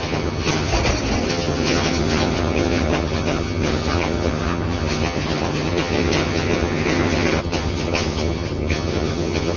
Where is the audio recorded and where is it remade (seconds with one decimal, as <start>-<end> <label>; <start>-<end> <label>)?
0.0-0.7 remade; 0.7-1.3 recorded; 1.3-9.6 remade